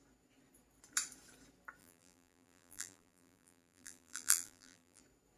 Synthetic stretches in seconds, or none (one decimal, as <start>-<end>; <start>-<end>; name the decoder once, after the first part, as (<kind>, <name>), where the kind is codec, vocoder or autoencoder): 1.8-5.0 (vocoder, BigVGAN v2)